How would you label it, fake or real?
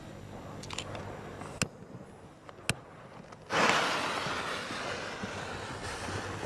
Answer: real